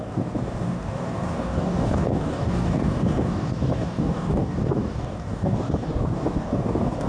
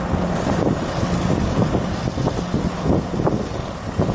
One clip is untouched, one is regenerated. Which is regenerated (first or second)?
first